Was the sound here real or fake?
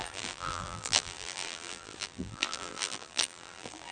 fake